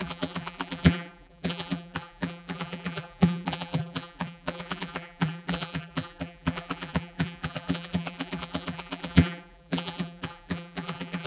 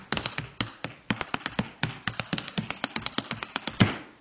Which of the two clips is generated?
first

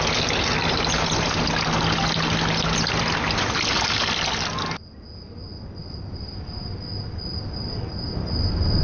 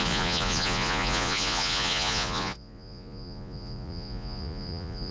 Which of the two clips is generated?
second